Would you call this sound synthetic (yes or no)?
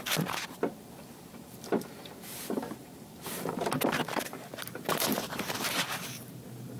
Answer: yes